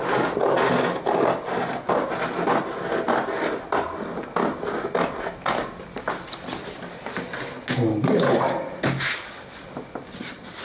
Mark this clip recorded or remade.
recorded